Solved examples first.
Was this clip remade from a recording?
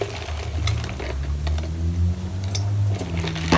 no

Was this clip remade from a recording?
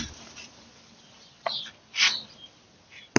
no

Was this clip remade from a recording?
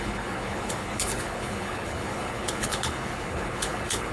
yes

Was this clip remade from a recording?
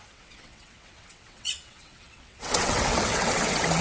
yes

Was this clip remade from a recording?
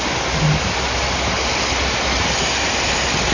no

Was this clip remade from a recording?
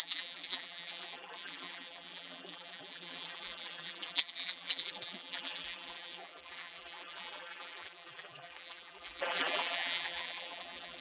yes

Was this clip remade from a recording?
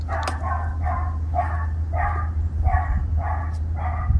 no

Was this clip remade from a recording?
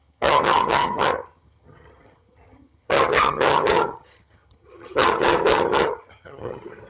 yes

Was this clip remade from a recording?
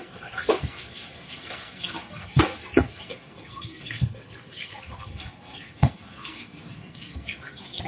yes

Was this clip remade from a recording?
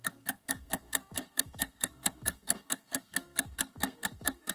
yes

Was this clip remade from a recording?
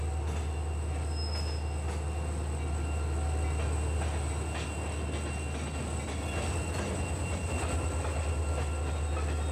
no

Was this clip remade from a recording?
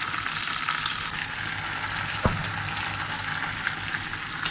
no